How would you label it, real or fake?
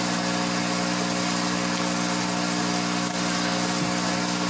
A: real